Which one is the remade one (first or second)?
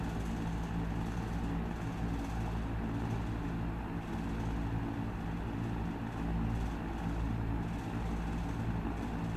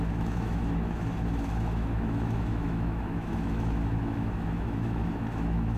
second